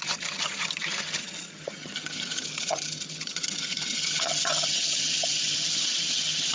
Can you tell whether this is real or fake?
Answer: fake